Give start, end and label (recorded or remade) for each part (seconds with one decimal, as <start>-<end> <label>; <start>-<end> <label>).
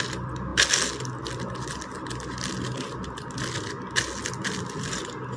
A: 0.0-5.4 recorded